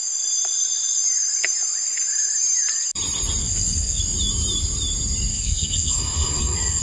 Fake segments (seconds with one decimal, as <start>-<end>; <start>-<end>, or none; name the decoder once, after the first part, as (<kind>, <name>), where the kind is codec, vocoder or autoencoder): 3.4-4.0 (codec, SNAC); 5.3-6.8